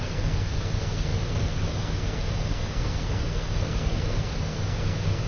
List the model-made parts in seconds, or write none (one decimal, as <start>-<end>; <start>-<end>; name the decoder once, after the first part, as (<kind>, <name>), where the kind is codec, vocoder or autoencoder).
0.0-5.3 (codec, SNAC)